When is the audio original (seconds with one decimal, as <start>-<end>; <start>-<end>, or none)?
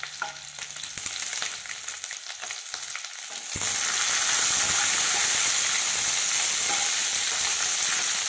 0.0-7.0; 7.6-8.3